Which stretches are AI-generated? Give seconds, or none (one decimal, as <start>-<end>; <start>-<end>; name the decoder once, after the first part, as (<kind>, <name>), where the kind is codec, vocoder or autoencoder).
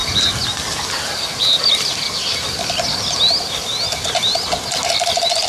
none